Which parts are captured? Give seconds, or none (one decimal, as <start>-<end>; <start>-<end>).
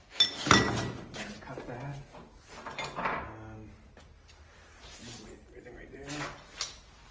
0.0-7.1